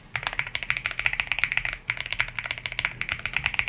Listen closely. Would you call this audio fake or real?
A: real